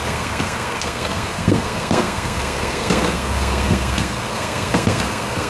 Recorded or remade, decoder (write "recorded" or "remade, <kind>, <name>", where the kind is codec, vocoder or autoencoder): remade, codec, SNAC